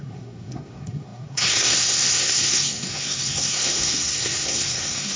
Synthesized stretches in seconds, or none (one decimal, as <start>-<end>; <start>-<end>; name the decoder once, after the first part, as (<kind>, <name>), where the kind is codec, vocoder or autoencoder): 0.0-5.2 (codec, SNAC)